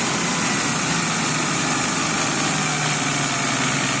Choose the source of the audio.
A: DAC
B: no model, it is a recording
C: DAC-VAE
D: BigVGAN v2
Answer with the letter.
B